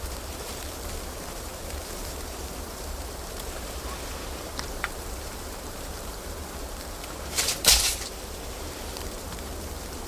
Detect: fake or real fake